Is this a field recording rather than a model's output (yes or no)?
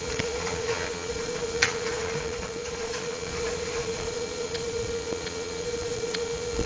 no